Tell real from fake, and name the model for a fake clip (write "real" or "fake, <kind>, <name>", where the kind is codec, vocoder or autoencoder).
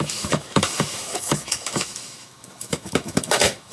fake, autoencoder, DAC-VAE